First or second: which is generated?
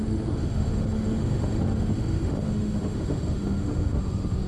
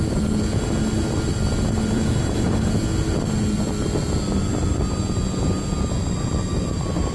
first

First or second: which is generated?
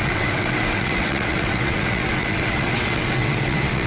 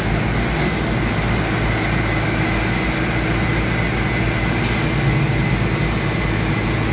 first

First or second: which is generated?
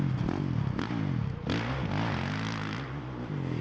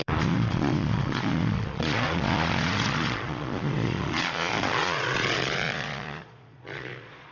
second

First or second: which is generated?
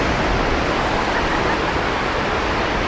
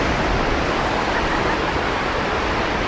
second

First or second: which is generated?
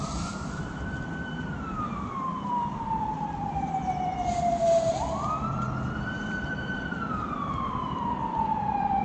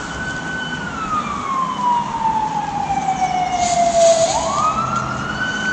first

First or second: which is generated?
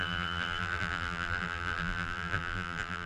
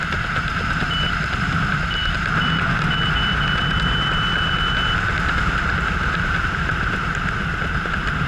first